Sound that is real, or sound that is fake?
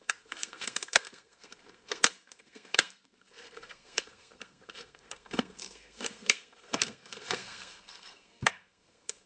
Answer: fake